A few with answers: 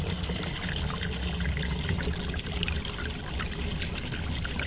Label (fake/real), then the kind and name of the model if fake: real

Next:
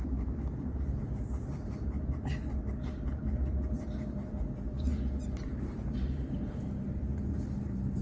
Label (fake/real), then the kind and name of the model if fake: fake, vocoder, BigVGAN v2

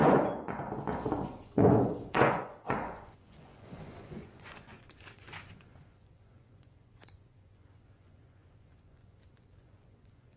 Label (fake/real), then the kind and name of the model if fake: fake, vocoder, Vocos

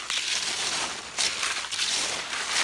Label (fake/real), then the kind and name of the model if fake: real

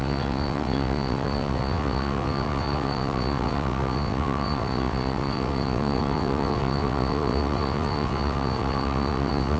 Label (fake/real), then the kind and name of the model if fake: fake, vocoder, WaveNeXt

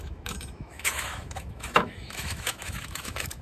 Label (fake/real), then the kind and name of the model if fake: fake, autoencoder, DAC-VAE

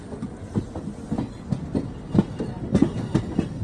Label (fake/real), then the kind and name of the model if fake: real